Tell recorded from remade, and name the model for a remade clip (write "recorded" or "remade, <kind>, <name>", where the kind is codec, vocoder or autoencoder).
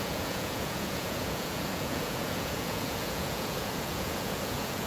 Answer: remade, vocoder, Vocos